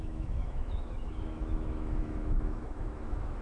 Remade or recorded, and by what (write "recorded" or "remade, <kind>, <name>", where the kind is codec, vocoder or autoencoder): remade, autoencoder, DAC-VAE